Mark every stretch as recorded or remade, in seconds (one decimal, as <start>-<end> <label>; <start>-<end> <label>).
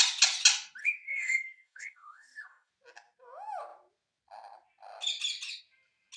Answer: 0.0-0.8 recorded; 0.8-2.7 remade; 2.7-6.2 recorded